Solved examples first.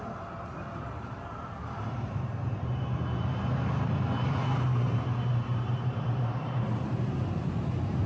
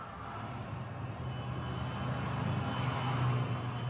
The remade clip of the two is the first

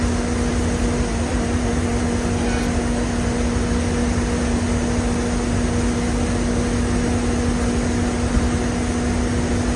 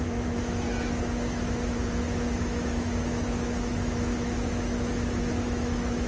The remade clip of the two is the second